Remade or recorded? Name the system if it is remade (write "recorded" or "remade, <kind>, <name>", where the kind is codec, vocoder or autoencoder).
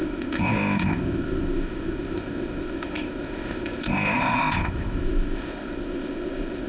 remade, codec, ZipCodec